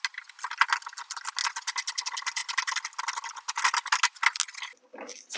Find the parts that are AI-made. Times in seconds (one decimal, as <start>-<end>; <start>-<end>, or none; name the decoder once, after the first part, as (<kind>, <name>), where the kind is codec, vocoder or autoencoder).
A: none